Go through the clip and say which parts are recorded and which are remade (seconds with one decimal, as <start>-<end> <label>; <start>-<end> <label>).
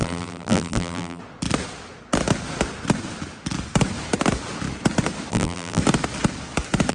0.0-1.2 remade; 1.2-5.3 recorded; 5.3-5.8 remade; 5.8-6.9 recorded